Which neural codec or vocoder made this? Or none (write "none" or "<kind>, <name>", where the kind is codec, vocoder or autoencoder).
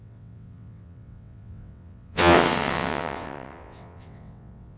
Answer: vocoder, WaveNeXt